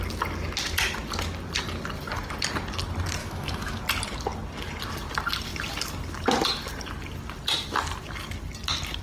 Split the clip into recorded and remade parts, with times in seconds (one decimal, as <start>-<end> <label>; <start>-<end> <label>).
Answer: 0.0-3.2 recorded; 3.2-3.8 remade; 3.8-9.0 recorded

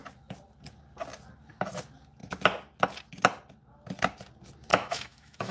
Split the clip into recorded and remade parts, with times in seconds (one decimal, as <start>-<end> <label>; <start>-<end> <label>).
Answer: 0.0-4.7 recorded; 4.7-5.5 remade

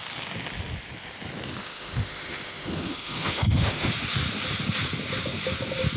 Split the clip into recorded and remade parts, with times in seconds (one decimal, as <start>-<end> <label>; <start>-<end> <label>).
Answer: 0.0-1.6 recorded; 1.6-3.9 remade; 3.9-6.0 recorded

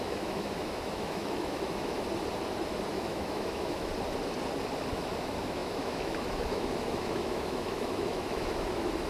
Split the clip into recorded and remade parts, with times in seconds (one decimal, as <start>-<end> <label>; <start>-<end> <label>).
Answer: 0.0-1.9 remade; 1.9-2.9 recorded; 2.9-3.9 remade; 3.9-4.9 recorded; 4.9-9.1 remade

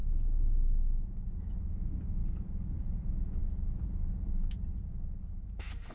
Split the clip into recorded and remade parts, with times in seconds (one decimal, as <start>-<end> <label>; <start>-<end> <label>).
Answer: 0.0-1.5 recorded; 1.5-2.2 remade; 2.2-2.8 recorded; 2.8-3.4 remade; 3.4-5.3 recorded; 5.3-5.9 remade